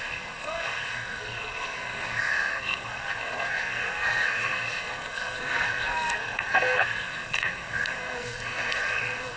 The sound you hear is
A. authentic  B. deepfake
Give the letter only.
B